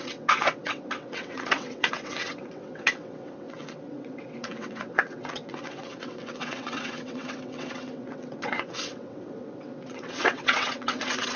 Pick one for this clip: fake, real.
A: fake